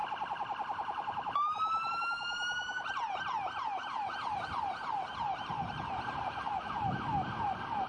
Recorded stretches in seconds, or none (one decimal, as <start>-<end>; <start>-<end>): 0.0-7.9